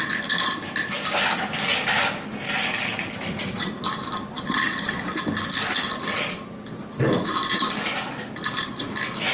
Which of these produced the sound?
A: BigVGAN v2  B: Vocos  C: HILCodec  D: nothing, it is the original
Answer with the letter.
D